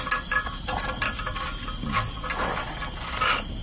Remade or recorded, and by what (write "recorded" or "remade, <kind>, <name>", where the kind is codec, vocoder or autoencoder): recorded